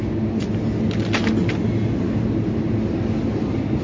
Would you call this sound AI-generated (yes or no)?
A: no